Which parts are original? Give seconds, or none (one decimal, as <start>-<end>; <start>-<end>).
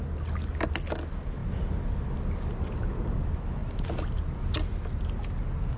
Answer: 0.0-5.8